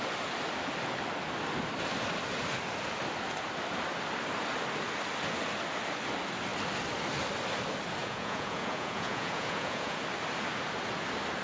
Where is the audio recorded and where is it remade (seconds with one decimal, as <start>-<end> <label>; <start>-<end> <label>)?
0.0-8.0 recorded; 8.0-10.0 remade; 10.0-11.4 recorded